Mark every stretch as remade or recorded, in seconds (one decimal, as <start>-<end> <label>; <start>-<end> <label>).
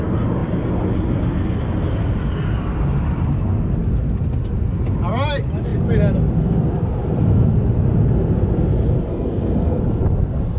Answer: 0.0-9.1 recorded; 9.1-9.8 remade; 9.8-10.6 recorded